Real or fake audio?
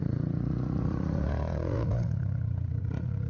fake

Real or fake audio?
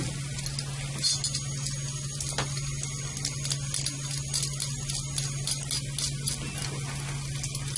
real